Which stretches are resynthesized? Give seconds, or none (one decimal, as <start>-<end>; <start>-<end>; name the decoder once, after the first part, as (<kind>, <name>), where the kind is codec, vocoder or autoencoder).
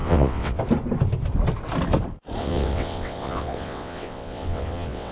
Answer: 0.0-0.6 (vocoder, WaveNeXt); 2.4-5.1